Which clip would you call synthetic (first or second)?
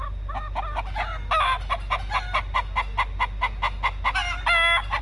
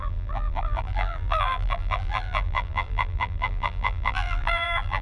second